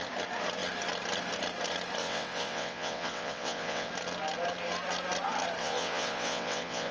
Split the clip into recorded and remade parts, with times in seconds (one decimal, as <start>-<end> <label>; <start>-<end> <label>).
0.0-2.0 recorded; 2.0-3.9 remade; 3.9-5.6 recorded; 5.6-6.9 remade

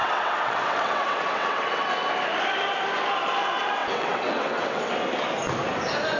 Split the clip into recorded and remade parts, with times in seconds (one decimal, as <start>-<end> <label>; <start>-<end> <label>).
0.0-1.9 remade; 1.9-3.8 recorded; 3.8-4.9 remade; 4.9-6.2 recorded